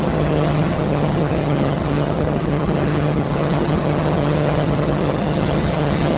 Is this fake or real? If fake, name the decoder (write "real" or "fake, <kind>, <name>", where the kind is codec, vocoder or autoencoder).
fake, vocoder, HiFi-GAN